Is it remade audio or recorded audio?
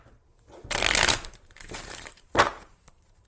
remade